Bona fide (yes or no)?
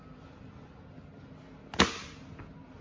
yes